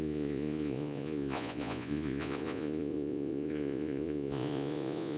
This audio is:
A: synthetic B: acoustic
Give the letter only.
A